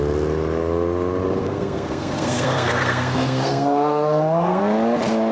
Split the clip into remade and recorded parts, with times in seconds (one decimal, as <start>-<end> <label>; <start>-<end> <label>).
0.0-1.4 recorded; 1.4-4.6 remade; 4.6-5.3 recorded